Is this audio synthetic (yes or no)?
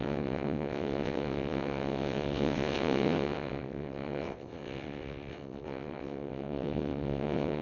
yes